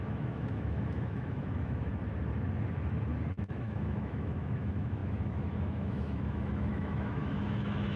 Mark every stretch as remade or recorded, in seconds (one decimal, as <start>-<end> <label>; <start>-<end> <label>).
0.0-1.9 remade; 1.9-3.3 recorded; 3.3-8.0 remade